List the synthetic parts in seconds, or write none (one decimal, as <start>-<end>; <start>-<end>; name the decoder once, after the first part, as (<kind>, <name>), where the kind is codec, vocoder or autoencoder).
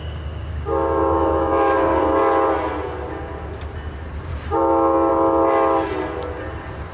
0.0-2.0 (codec, DAC); 4.3-5.1